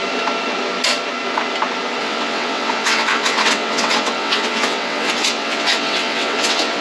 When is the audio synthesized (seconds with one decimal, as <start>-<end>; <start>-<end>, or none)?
2.0-6.8